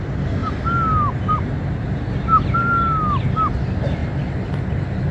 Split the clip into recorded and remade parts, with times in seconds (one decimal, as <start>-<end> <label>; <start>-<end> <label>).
0.0-5.1 recorded